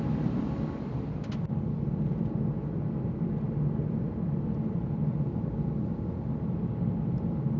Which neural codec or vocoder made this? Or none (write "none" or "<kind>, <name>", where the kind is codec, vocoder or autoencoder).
none